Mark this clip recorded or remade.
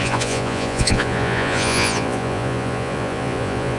remade